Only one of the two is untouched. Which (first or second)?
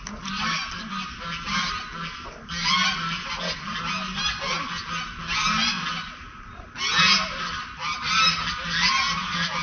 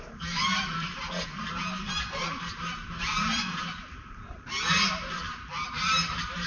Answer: first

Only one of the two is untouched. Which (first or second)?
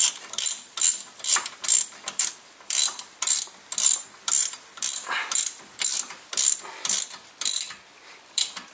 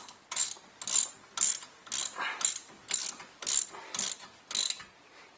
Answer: second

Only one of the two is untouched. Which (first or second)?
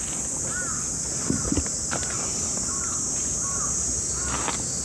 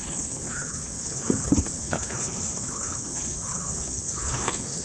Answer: first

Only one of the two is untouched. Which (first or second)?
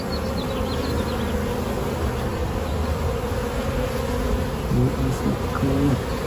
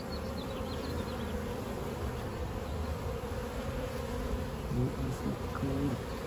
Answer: first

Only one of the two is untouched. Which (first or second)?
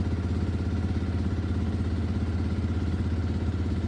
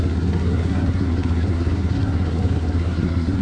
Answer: first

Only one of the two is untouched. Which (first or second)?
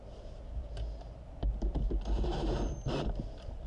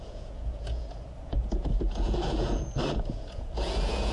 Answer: first